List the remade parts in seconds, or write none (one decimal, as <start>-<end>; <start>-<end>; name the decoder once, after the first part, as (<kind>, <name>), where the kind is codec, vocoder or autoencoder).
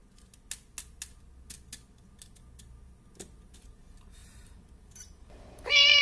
3.6-6.0 (vocoder, BigVGAN v2)